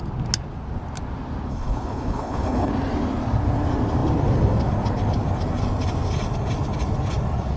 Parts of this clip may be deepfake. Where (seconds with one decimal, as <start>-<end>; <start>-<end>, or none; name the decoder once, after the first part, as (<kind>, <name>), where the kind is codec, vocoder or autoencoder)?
1.5-2.7 (codec, HILCodec)